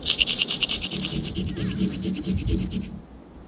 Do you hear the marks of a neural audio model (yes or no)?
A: no